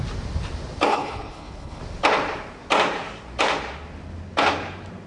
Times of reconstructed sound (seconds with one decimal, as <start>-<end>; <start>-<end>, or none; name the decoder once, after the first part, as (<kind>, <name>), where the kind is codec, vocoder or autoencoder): 0.9-1.8 (codec, HILCodec)